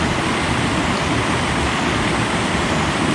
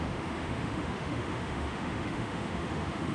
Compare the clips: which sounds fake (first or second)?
second